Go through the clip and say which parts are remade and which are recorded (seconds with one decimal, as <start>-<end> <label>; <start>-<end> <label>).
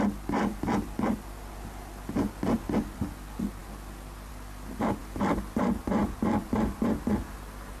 0.0-7.8 recorded